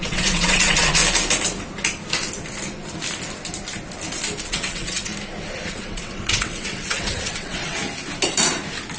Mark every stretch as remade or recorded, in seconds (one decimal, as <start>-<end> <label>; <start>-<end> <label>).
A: 0.0-1.0 remade; 1.0-4.4 recorded; 4.4-5.1 remade; 5.1-5.7 recorded; 5.7-7.8 remade; 7.8-9.0 recorded